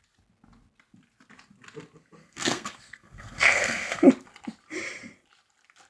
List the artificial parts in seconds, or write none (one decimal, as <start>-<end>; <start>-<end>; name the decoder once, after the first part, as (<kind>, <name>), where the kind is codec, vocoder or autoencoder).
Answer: 2.2-4.1 (codec, SNAC)